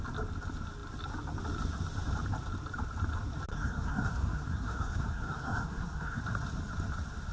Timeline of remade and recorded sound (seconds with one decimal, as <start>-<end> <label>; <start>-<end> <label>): 0.0-3.5 recorded; 3.5-6.2 remade; 6.2-7.3 recorded